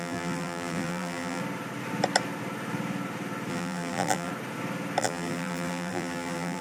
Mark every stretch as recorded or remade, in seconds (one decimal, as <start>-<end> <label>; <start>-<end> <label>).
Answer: 0.0-1.4 remade; 1.4-3.5 recorded; 3.5-4.3 remade; 4.3-5.0 recorded; 5.0-6.6 remade